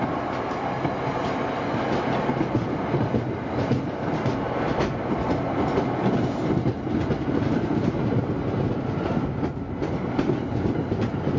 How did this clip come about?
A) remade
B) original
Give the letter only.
B